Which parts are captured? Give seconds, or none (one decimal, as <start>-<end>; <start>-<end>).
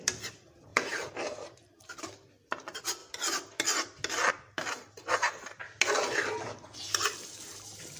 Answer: 3.0-4.3; 5.6-7.6